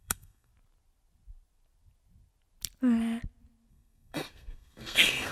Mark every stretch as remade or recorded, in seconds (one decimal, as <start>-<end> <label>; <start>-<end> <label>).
0.0-0.5 remade; 0.5-3.7 recorded; 3.7-5.3 remade